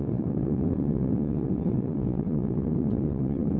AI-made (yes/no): yes